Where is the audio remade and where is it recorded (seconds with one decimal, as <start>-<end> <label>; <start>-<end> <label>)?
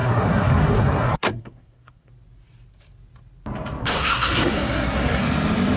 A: 0.0-2.1 remade; 2.1-3.8 recorded; 3.8-5.2 remade; 5.2-5.8 recorded